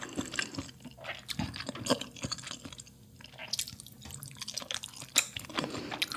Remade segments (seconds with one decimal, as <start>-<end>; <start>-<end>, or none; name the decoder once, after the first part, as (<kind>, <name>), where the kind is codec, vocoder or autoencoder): none